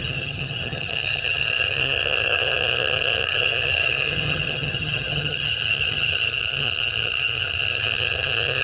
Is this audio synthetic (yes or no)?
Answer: yes